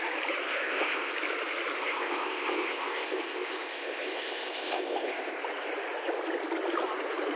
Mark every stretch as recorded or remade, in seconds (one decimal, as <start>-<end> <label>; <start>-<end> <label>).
0.0-0.5 recorded; 0.5-1.1 remade; 1.1-1.8 recorded; 1.8-5.4 remade; 5.4-7.4 recorded